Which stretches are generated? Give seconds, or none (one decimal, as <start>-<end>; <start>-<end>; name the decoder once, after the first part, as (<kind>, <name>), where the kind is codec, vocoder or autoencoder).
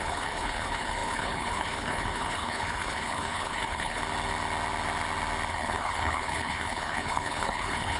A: 0.0-4.0 (codec, HILCodec); 5.5-8.0